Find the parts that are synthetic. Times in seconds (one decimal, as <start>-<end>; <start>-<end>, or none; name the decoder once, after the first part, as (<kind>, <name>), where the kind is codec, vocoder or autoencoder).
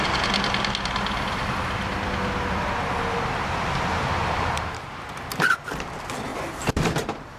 4.2-5.7 (vocoder, BigVGAN v2); 6.3-7.4